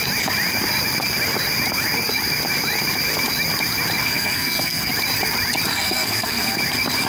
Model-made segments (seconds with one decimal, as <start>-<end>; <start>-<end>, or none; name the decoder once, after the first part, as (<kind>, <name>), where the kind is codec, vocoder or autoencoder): 4.0-4.9 (codec, SNAC); 5.7-6.6